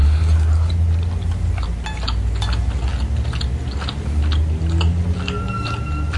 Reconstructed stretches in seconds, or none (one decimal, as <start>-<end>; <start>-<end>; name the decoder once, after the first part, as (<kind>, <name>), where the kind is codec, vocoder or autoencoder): none